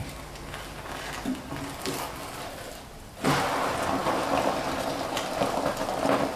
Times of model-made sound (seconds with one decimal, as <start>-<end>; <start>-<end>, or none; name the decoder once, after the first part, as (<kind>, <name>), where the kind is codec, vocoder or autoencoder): none